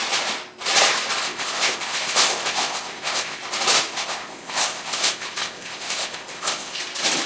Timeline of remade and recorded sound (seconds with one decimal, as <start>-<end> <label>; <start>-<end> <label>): 0.0-1.2 recorded; 1.2-3.4 remade; 3.4-3.9 recorded; 3.9-6.8 remade; 6.8-7.3 recorded